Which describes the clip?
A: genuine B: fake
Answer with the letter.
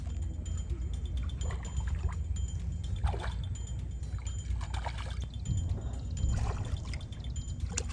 A